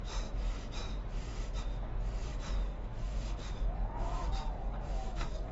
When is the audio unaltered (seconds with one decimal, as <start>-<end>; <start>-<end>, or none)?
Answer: 0.0-2.3